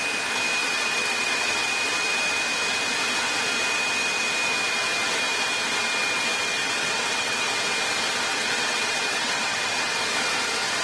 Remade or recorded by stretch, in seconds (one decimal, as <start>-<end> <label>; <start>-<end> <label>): 0.0-0.6 recorded; 0.6-1.7 remade; 1.7-6.6 recorded; 6.6-7.5 remade; 7.5-8.3 recorded; 8.3-9.9 remade; 9.9-10.8 recorded